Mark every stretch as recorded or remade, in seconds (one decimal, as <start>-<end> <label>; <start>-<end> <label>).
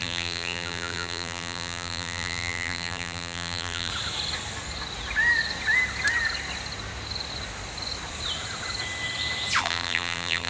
0.0-3.9 remade; 3.9-9.6 recorded; 9.6-10.5 remade